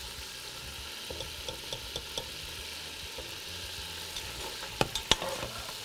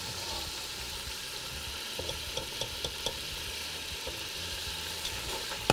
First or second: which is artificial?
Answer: second